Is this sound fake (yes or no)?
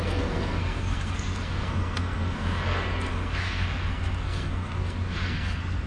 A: yes